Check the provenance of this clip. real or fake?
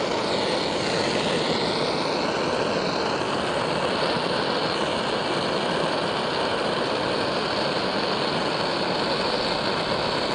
real